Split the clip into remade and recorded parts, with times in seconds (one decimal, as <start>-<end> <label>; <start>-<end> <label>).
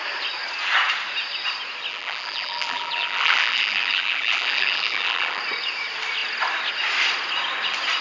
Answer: 0.0-1.9 recorded; 1.9-5.4 remade; 5.4-8.0 recorded